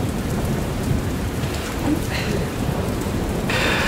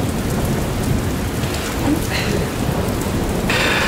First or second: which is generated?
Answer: first